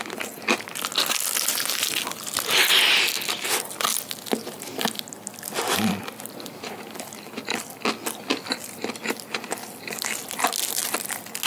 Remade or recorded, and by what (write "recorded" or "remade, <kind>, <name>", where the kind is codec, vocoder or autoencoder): recorded